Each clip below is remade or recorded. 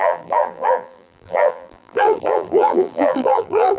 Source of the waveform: remade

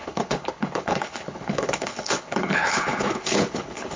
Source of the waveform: remade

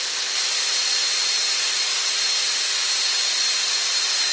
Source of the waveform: remade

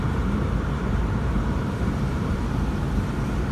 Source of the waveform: remade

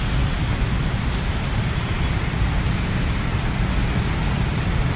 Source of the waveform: recorded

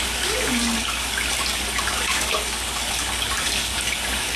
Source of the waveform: remade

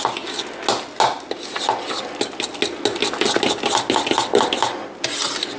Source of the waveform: recorded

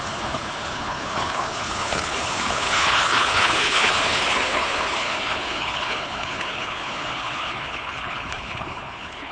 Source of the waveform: remade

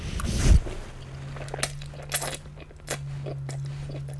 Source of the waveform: recorded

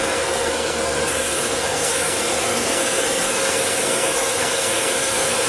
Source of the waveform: remade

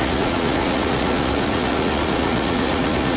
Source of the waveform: remade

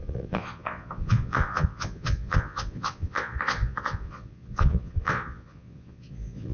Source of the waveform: remade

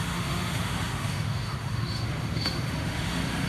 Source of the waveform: remade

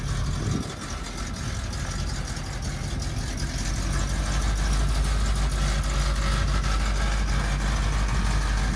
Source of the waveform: recorded